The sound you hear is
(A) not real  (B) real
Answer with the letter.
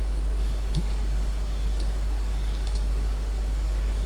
A